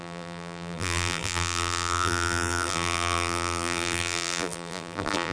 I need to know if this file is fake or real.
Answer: fake